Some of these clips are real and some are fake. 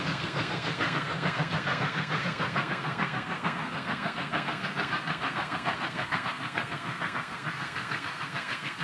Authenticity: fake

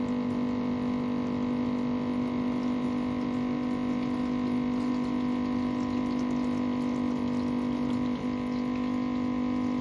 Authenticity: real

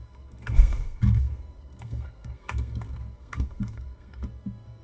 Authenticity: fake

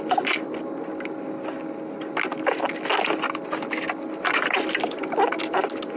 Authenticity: real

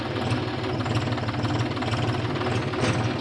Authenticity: real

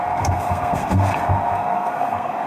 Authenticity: fake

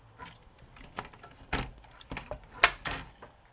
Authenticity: real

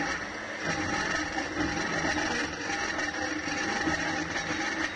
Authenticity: real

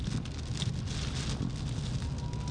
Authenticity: real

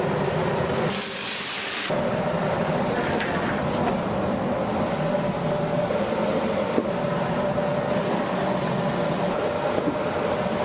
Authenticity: real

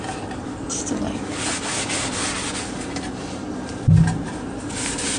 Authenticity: real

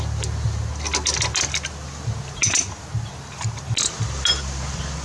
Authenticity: real